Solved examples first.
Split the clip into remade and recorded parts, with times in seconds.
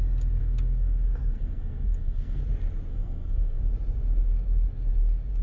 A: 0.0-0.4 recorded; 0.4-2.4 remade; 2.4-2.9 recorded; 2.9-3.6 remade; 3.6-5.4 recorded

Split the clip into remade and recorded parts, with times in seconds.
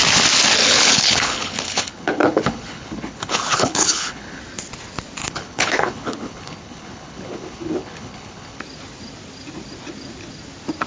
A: 0.0-0.6 recorded; 0.6-4.4 remade; 4.4-5.2 recorded; 5.2-8.6 remade; 8.6-10.9 recorded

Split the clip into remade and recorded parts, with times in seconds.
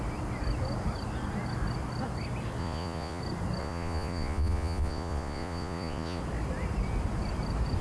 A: 0.0-2.6 recorded; 2.6-3.2 remade; 3.2-3.6 recorded; 3.6-6.2 remade; 6.2-7.8 recorded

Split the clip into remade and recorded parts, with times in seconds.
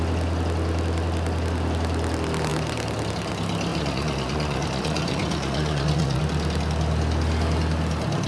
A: 0.0-3.7 recorded; 3.7-6.2 remade; 6.2-8.3 recorded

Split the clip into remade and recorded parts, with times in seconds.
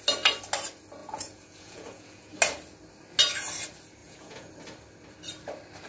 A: 0.0-1.0 recorded; 1.0-2.3 remade; 2.3-4.0 recorded; 4.0-4.5 remade; 4.5-5.9 recorded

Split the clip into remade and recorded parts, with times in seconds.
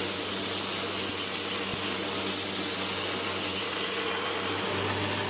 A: 0.0-3.5 recorded; 3.5-4.1 remade; 4.1-5.3 recorded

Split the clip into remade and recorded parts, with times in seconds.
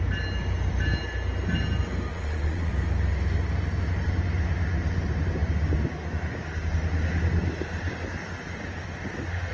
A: 0.0-2.1 recorded; 2.1-2.7 remade; 2.7-9.5 recorded